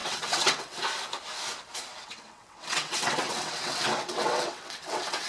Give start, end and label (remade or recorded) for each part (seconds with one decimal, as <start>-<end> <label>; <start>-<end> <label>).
0.0-0.8 remade; 0.8-1.9 recorded; 1.9-5.3 remade